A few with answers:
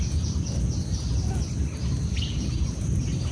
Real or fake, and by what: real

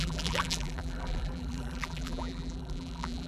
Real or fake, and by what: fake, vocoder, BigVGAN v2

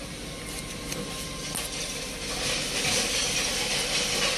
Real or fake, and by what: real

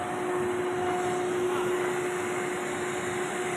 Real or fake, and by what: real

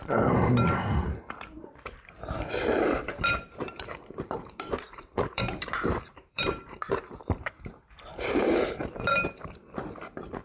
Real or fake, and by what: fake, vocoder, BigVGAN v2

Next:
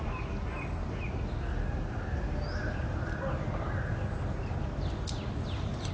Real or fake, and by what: real